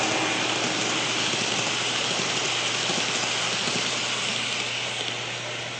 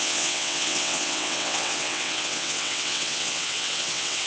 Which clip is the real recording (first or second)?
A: first